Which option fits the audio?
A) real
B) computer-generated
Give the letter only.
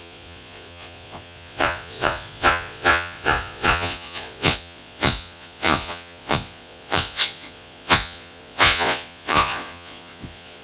B